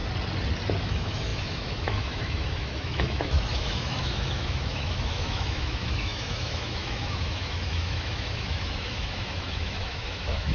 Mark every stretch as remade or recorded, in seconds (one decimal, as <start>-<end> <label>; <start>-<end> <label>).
0.0-0.8 recorded; 0.8-10.5 remade